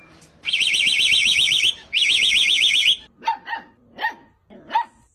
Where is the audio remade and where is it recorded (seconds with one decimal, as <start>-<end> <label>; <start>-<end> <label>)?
0.0-1.2 recorded; 1.2-2.8 remade; 2.8-5.1 recorded